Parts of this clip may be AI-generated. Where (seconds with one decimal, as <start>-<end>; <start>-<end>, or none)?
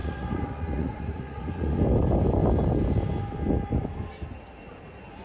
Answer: 0.0-1.8